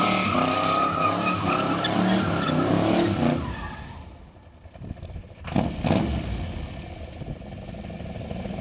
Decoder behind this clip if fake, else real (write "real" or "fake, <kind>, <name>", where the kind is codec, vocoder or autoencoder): real